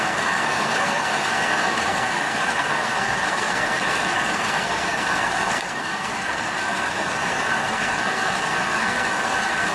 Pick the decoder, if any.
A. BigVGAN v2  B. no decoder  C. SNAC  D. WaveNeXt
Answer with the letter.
C